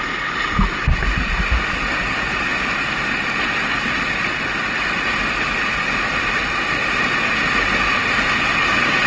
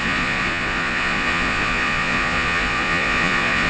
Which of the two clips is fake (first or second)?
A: second